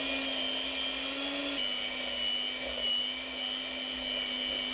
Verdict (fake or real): real